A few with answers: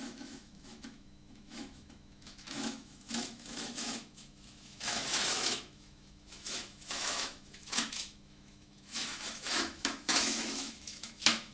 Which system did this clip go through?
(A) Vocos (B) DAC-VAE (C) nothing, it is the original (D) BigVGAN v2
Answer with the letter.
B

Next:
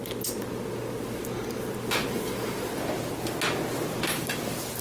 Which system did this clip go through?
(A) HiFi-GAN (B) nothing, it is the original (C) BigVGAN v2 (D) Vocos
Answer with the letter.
B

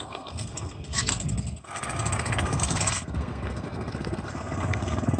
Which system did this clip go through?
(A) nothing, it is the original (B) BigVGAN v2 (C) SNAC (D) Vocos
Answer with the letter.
C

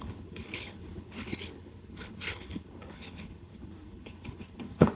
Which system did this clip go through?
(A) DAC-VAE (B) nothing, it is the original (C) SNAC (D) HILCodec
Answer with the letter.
D